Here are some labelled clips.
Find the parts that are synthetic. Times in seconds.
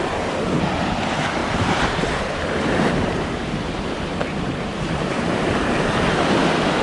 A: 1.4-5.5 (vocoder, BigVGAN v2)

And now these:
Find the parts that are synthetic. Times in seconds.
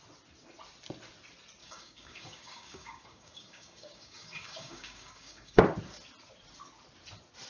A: 1.6-5.6 (codec, DAC)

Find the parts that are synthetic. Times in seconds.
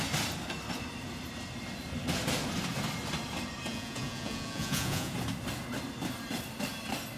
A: 3.7-5.1 (vocoder, Vocos)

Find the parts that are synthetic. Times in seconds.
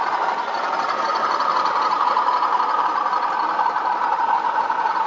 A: 0.0-5.1 (vocoder, BigVGAN v2)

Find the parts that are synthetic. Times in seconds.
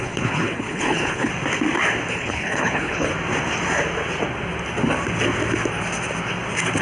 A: 0.0-1.3 (codec, HILCodec); 2.1-3.1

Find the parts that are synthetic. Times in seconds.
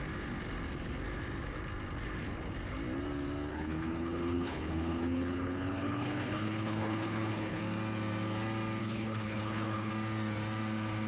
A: 3.5-7.6 (codec, HILCodec); 8.8-9.9